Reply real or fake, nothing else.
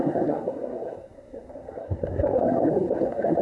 fake